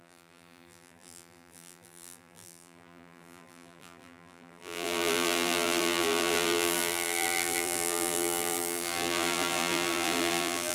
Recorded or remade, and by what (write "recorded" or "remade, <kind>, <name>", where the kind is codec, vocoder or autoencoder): remade, vocoder, BigVGAN v2